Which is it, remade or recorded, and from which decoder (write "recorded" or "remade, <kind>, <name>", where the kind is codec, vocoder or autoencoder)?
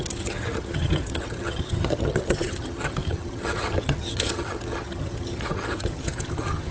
remade, vocoder, HiFi-GAN